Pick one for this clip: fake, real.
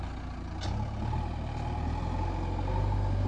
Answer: real